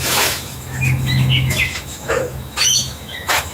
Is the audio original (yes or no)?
no